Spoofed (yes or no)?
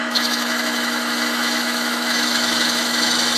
yes